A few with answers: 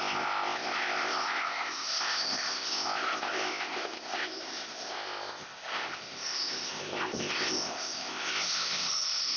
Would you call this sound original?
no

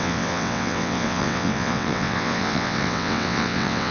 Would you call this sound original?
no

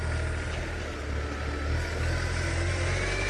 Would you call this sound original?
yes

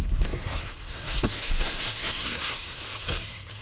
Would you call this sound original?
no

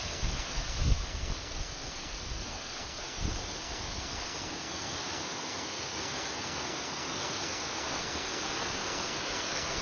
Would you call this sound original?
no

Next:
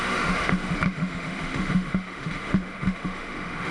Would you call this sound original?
no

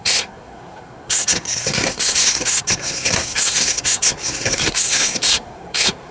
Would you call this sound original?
no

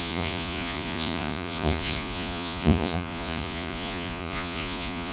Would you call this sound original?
no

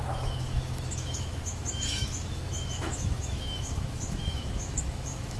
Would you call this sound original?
no